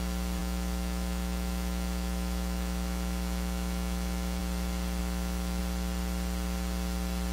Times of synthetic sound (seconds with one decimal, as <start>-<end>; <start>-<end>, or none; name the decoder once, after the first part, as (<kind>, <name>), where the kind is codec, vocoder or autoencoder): 0.4-4.4 (autoencoder, DAC-VAE); 5.0-5.6